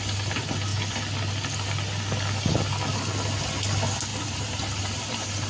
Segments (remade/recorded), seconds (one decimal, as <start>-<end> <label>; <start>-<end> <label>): 0.0-4.1 recorded; 4.1-5.5 remade